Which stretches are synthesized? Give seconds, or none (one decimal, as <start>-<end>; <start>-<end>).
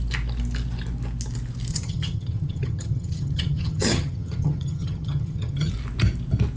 1.7-5.7